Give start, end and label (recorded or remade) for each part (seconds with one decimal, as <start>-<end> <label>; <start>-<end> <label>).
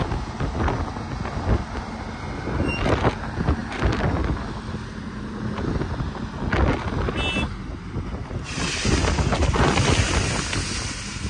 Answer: 0.0-11.3 recorded